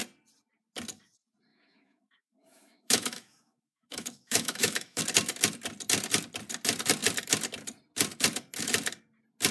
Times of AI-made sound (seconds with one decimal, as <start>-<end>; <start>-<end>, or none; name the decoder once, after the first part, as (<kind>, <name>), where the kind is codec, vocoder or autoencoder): 1.5-5.0 (autoencoder, DAC-VAE)